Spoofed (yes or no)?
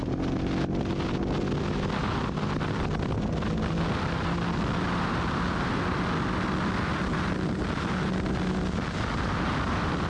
no